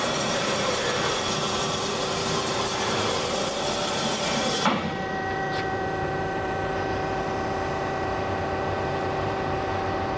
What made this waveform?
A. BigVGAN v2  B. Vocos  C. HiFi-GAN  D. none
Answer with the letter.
A